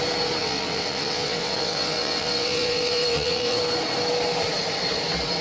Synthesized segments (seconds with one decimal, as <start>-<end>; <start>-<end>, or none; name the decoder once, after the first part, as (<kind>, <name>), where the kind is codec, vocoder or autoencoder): 0.4-3.6 (vocoder, WaveNeXt)